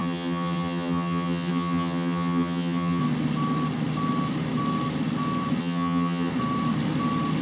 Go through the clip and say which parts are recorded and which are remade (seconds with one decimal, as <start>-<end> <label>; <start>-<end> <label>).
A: 0.0-3.0 remade; 3.0-5.6 recorded; 5.6-6.3 remade; 6.3-7.4 recorded